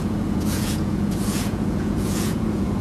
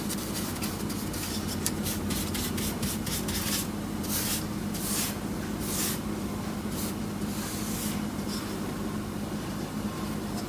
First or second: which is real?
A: second